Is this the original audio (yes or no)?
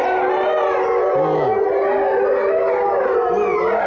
yes